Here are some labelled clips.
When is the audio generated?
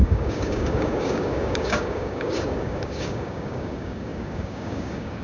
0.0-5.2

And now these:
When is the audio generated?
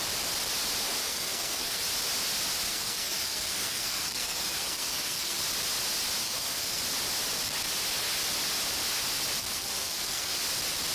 1.0-1.8; 2.7-5.4; 6.2-6.8; 9.4-10.4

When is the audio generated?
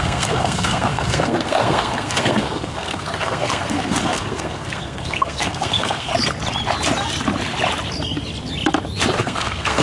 0.0-6.1; 9.2-9.8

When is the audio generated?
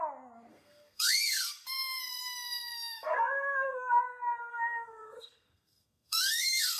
0.5-4.0; 4.5-6.8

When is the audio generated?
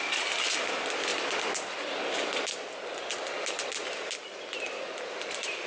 none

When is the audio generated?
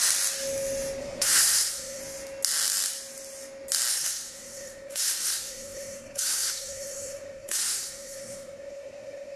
1.0-2.0; 3.9-9.4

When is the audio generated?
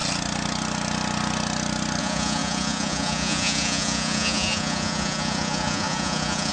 2.0-6.5